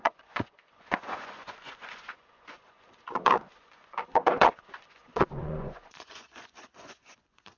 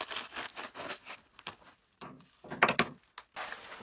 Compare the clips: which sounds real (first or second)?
second